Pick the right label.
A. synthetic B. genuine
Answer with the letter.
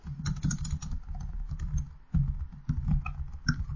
B